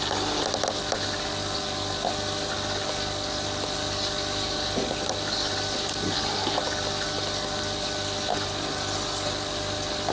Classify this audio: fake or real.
real